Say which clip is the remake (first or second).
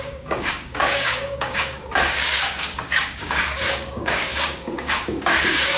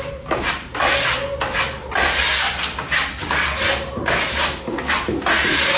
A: first